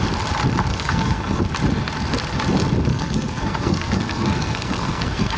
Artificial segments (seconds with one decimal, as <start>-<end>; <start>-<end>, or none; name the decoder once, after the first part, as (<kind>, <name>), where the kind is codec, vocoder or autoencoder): 0.7-1.4 (codec, SNAC); 2.9-5.4

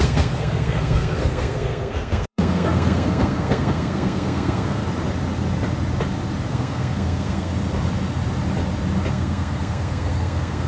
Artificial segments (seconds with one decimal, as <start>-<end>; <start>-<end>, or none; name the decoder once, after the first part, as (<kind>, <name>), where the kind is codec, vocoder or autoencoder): 0.0-4.8 (codec, SNAC); 6.5-7.5; 9.1-10.7

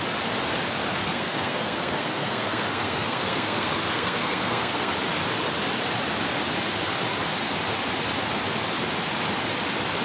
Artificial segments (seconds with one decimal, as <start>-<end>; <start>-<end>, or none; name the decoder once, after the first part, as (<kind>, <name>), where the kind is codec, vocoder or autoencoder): 0.9-4.9 (codec, SNAC)